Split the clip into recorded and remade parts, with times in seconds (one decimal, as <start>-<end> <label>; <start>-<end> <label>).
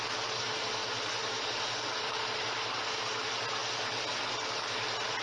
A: 0.0-5.2 recorded